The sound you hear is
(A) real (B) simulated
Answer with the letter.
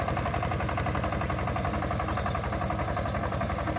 A